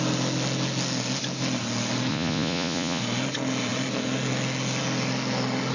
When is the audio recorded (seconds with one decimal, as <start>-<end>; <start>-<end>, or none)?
0.0-2.1; 3.0-5.7